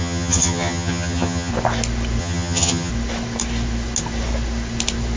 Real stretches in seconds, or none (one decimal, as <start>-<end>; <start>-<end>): 1.5-2.2; 2.9-5.2